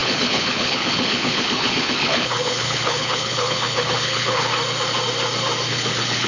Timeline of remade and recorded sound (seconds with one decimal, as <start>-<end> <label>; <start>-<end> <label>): 0.0-4.5 remade; 4.5-5.7 recorded; 5.7-6.3 remade

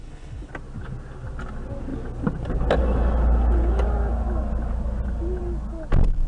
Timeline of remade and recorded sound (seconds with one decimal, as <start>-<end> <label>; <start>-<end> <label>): 0.0-0.5 remade; 0.5-6.3 recorded

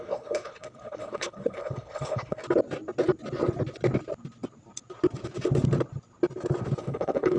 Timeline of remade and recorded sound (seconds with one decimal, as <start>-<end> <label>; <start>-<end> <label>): 0.0-2.4 remade; 2.4-6.8 recorded; 6.8-7.4 remade

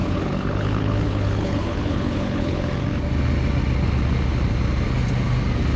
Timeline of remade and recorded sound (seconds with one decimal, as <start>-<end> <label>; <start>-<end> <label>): 0.0-2.7 remade; 2.7-5.8 recorded

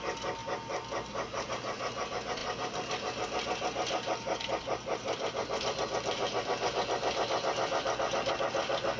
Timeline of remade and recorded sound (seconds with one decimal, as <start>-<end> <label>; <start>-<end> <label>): 0.0-9.0 recorded

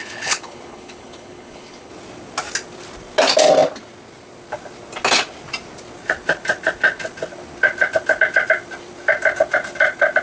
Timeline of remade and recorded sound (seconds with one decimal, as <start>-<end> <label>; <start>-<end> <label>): 0.0-1.9 remade; 1.9-10.2 recorded

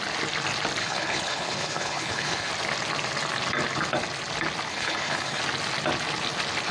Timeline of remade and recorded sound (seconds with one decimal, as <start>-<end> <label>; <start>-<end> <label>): 0.0-0.8 recorded; 0.8-2.5 remade; 2.5-4.7 recorded; 4.7-5.4 remade; 5.4-6.7 recorded

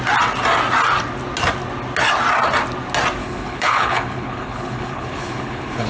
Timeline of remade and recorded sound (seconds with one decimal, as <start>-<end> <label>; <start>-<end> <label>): 0.0-3.2 recorded; 3.2-5.9 remade